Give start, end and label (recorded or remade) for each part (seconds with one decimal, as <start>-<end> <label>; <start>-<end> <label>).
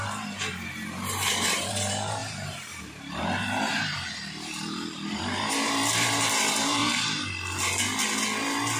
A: 0.0-6.8 remade; 6.8-8.8 recorded